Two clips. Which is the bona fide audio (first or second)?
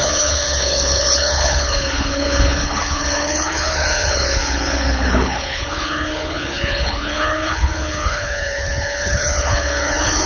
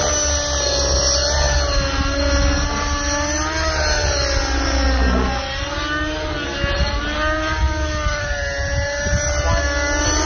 second